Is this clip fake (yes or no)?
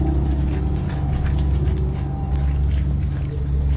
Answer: no